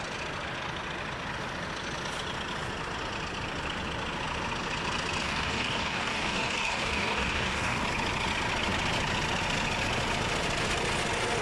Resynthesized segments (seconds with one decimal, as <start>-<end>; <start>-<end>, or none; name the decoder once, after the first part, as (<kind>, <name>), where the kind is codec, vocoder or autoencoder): 5.2-7.8 (codec, DAC)